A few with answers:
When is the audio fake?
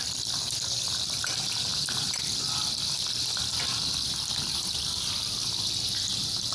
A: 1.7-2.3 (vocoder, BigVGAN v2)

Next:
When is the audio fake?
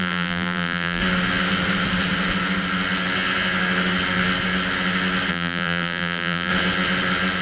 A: 0.0-1.0 (vocoder, BigVGAN v2); 5.3-6.5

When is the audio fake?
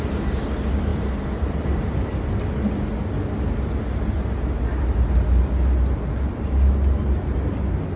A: 0.9-2.4 (vocoder, BigVGAN v2)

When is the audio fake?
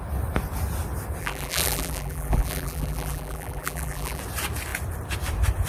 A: 1.2-4.2 (vocoder, BigVGAN v2)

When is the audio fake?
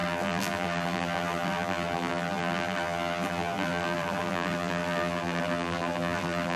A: 0.0-6.6 (vocoder, BigVGAN v2)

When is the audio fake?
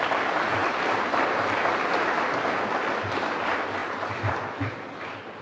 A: 3.8-5.0 (vocoder, BigVGAN v2)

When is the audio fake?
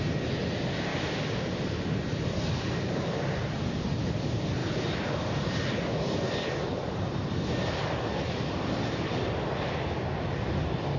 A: 0.9-1.7 (vocoder, BigVGAN v2); 4.6-5.9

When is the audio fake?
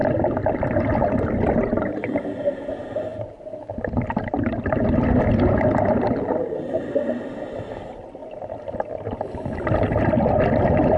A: none